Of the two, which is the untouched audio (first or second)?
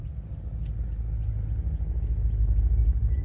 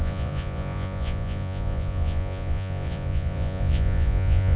first